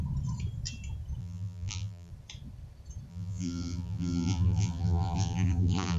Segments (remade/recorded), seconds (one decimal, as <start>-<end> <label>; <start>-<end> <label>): 0.0-1.2 recorded; 1.2-2.1 remade; 2.1-3.1 recorded; 3.1-6.0 remade